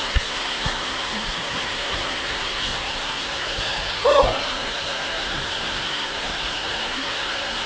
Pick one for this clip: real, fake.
fake